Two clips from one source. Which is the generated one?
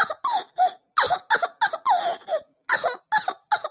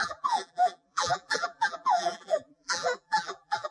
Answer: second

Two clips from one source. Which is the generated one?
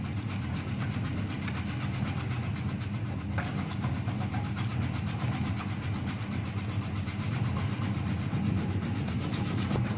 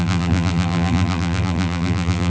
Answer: second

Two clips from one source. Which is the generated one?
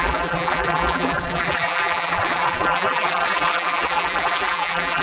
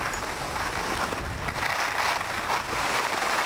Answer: first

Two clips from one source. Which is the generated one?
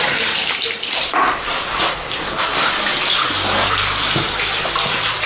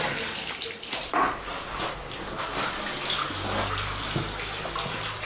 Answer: first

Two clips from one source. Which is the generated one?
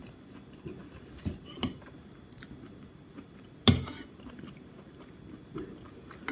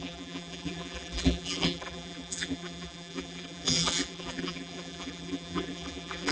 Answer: second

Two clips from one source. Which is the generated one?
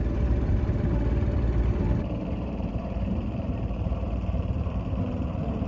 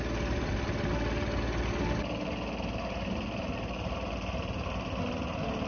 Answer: first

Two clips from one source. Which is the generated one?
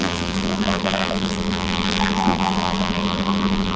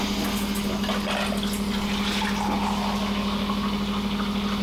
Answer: first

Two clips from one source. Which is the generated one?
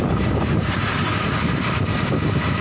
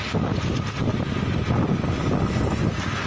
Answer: first